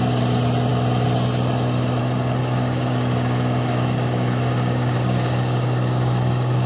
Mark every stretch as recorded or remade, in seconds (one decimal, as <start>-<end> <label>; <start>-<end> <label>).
0.0-2.4 recorded; 2.4-6.7 remade